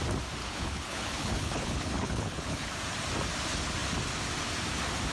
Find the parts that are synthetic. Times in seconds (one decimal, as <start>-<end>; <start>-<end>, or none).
0.4-2.7